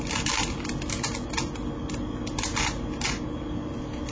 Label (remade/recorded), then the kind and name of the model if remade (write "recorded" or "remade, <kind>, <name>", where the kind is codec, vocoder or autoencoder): recorded